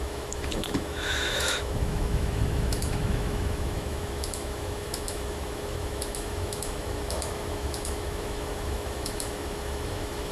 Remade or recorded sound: remade